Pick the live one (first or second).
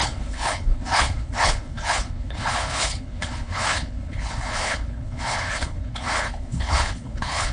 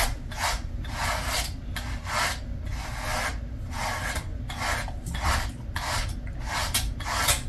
second